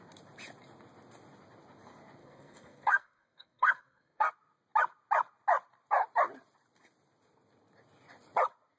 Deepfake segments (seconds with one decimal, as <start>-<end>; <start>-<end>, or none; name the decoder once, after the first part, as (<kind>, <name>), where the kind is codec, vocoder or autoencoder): 2.2-4.3 (codec, SNAC)